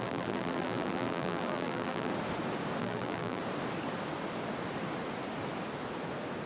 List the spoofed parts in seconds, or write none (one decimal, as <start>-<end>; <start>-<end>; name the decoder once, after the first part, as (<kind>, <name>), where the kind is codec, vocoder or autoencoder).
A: 0.0-2.1 (vocoder, BigVGAN v2); 2.8-3.4